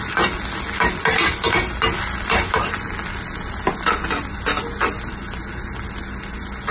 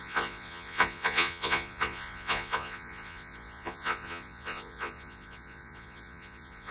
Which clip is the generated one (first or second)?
second